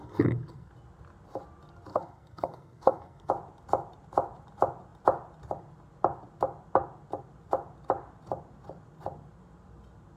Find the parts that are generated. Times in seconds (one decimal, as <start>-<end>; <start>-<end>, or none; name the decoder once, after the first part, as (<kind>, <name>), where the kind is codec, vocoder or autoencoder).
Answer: 0.0-0.7 (codec, SNAC); 1.9-3.3